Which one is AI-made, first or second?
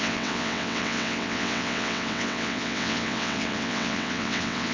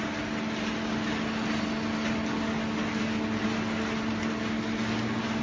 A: first